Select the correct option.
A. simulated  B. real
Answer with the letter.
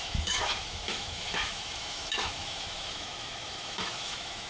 A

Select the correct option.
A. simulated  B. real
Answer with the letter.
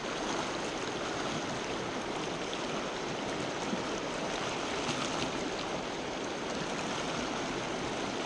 B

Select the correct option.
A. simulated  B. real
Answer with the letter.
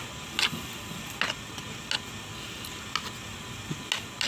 B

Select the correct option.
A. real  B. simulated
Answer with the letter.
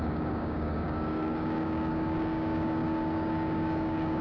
B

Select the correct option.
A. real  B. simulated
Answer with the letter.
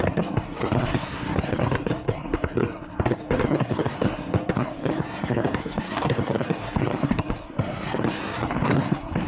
B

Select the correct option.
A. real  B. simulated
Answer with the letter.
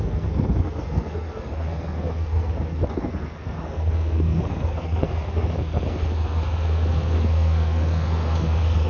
B